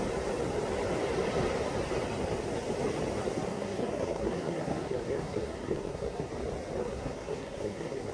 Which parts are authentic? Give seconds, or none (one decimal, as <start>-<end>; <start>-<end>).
0.0-3.5; 6.3-6.8

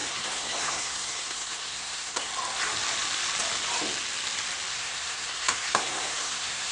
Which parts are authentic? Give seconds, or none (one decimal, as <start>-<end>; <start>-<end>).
2.3-4.7